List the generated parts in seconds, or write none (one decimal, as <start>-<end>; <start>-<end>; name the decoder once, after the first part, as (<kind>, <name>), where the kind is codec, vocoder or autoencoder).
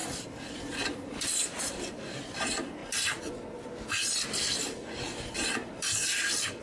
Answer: 0.0-2.8 (vocoder, BigVGAN v2); 4.0-6.6